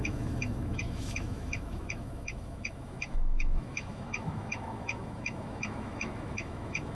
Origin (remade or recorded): remade